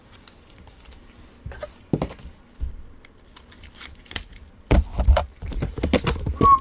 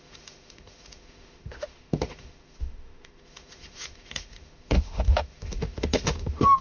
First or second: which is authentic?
first